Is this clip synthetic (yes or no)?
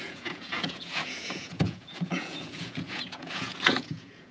yes